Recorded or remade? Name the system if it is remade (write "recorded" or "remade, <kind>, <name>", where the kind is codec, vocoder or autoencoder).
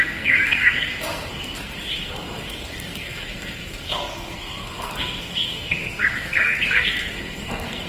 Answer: remade, codec, SNAC